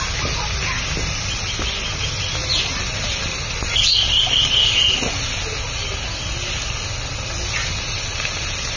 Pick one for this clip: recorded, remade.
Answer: recorded